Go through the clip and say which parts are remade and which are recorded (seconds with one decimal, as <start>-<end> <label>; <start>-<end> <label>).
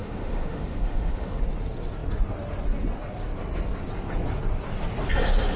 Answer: 0.0-1.4 remade; 1.4-5.6 recorded